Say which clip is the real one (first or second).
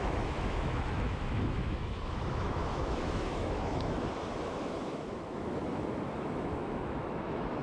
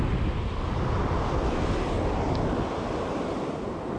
second